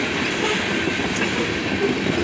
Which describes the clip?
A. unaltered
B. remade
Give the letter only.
A